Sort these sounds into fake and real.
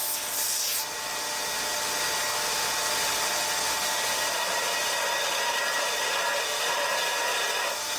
real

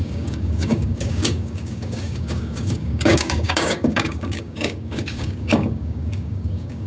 fake